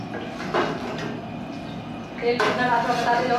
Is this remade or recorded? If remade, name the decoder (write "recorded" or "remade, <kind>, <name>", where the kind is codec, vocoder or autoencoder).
recorded